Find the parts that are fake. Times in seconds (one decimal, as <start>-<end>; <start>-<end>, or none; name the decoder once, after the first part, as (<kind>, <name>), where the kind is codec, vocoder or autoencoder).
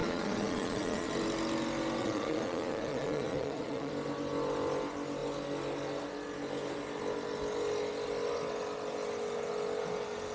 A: 0.0-1.1 (vocoder, Vocos); 2.0-3.9